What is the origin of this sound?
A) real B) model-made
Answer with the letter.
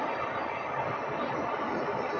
A